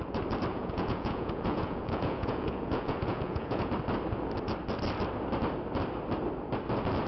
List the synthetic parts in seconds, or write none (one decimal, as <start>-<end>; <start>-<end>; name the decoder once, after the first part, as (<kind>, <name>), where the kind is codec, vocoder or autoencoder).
0.5-3.7 (vocoder, Vocos)